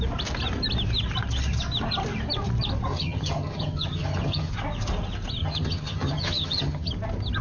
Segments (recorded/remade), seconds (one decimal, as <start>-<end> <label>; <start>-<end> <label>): 0.0-2.9 recorded; 2.9-4.5 remade; 4.5-5.4 recorded; 5.4-6.9 remade; 6.9-7.4 recorded